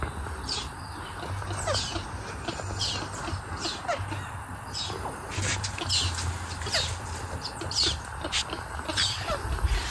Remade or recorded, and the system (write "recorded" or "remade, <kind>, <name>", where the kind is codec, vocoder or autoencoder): recorded